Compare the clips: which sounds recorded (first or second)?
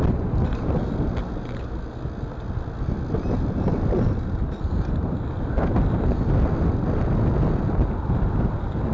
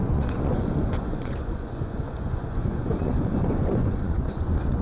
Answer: first